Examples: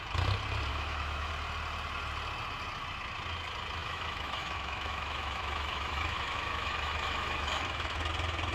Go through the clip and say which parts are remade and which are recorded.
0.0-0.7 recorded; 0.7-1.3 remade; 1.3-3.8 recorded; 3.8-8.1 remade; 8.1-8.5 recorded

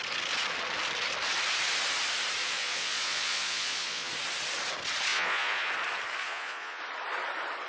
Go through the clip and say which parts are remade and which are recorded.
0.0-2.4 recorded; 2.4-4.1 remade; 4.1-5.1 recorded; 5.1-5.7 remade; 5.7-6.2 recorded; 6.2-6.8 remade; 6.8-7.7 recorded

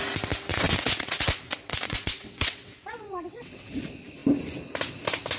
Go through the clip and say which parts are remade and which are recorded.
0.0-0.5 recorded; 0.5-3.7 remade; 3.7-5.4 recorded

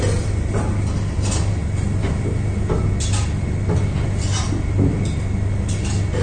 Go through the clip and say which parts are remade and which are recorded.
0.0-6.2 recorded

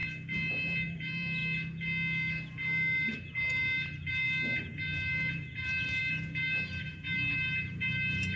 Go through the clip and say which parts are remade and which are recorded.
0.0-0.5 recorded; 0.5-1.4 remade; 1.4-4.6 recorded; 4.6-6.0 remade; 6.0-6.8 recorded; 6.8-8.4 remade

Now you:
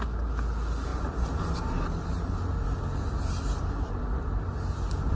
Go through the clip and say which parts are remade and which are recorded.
0.0-5.1 recorded

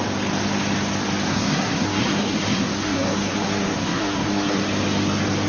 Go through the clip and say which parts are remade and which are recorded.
0.0-1.3 recorded; 1.3-4.6 remade; 4.6-5.5 recorded

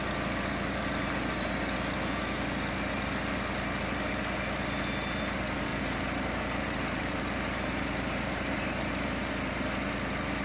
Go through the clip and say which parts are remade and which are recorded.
0.0-5.7 recorded; 5.7-9.3 remade; 9.3-10.4 recorded